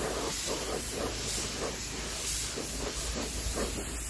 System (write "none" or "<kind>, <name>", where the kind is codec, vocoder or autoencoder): none